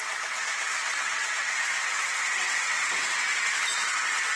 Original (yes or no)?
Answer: no